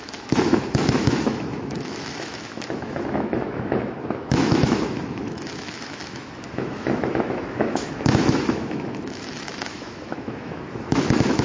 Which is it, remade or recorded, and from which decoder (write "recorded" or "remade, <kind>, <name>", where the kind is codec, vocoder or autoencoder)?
remade, autoencoder, DAC-VAE